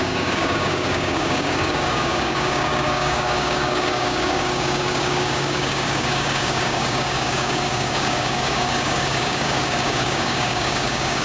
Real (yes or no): no